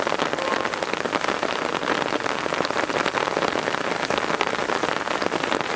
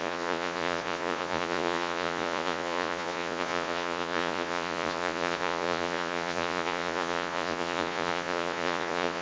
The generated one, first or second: second